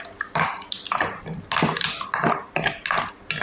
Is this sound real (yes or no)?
yes